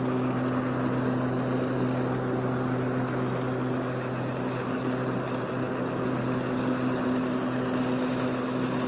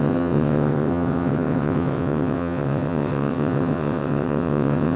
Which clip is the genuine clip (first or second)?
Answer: first